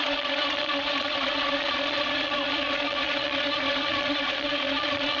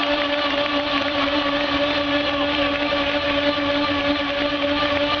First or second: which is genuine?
second